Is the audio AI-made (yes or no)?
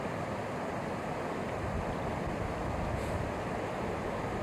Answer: no